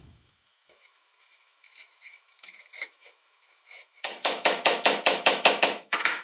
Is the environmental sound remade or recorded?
remade